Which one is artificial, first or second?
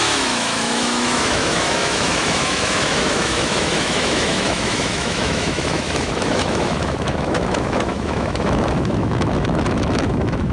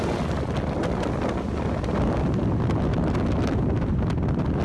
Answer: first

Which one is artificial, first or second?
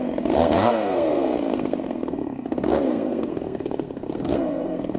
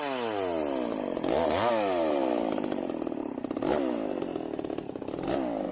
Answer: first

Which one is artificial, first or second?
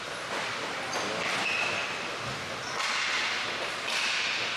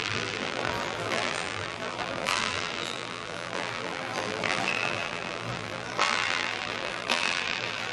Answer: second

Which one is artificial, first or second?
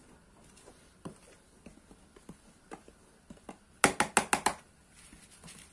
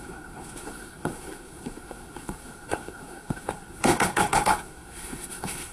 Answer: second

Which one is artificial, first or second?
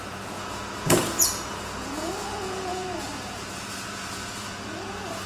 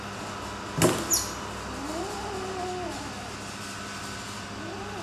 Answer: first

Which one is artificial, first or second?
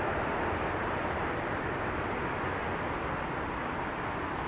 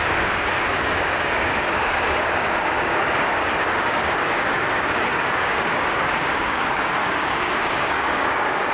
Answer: second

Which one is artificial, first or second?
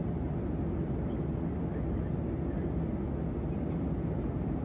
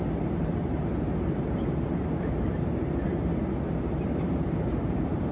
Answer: second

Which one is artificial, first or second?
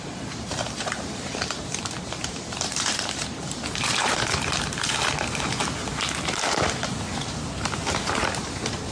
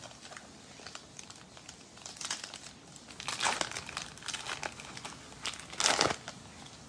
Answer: first